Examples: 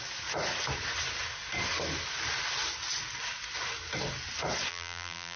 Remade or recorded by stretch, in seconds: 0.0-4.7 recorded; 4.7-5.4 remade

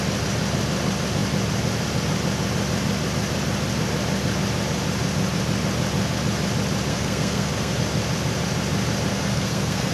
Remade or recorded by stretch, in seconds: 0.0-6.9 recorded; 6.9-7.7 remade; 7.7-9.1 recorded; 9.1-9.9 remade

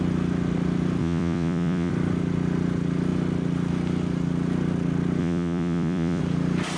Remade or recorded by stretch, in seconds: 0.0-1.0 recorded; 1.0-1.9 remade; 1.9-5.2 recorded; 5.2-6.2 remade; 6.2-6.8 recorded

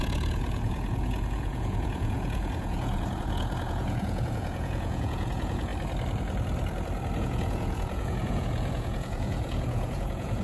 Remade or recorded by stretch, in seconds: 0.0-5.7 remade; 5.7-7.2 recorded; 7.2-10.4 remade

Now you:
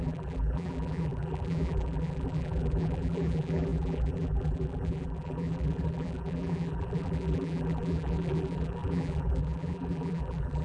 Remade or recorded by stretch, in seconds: 0.0-10.6 remade